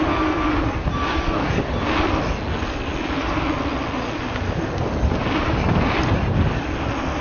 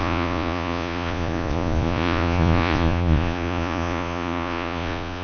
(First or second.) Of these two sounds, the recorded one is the first